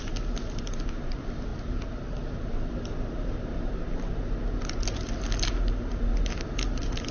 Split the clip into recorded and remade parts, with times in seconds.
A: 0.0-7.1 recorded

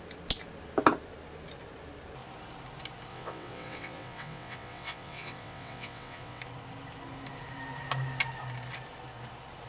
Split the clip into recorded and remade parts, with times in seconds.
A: 0.0-3.1 recorded; 3.1-6.4 remade; 6.4-9.7 recorded